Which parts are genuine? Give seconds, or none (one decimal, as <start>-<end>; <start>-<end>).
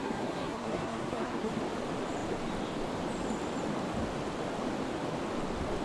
1.5-5.8